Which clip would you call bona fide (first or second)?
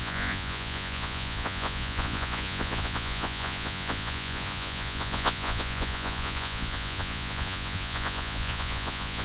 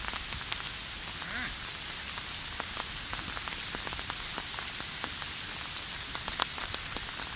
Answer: second